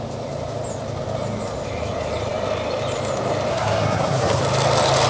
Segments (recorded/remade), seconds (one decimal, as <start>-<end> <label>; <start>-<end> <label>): 0.0-3.5 recorded; 3.5-4.4 remade; 4.4-5.1 recorded